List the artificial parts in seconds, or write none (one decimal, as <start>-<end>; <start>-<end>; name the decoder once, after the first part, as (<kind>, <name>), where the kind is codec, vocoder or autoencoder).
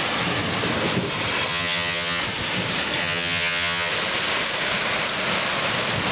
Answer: 1.5-2.2 (vocoder, HiFi-GAN); 3.0-3.9